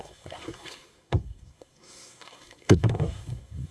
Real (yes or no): no